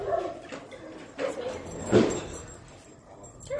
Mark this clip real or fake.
fake